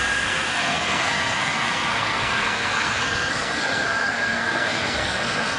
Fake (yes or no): yes